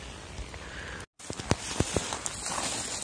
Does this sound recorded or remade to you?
recorded